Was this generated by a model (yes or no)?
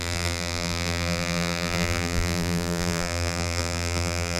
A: yes